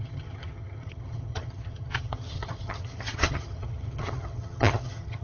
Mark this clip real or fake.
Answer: fake